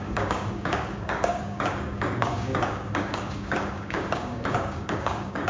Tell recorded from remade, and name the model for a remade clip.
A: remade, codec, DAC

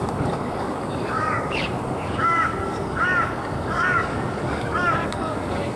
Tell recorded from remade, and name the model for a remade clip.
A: remade, codec, DAC